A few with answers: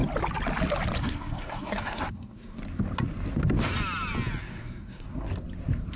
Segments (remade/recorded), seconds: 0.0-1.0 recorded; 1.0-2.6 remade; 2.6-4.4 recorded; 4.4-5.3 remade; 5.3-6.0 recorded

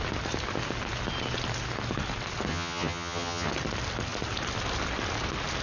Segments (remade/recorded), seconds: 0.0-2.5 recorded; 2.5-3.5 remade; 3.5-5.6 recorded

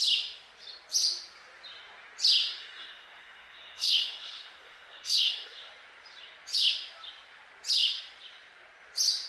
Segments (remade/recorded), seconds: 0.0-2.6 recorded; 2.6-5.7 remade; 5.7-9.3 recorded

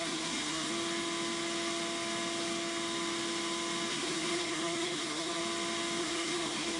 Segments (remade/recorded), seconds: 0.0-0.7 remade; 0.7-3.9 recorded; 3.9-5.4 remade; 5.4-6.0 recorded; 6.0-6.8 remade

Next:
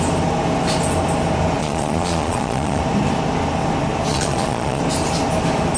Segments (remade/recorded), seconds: 0.0-1.6 recorded; 1.6-2.8 remade; 2.8-4.1 recorded; 4.1-4.8 remade; 4.8-5.8 recorded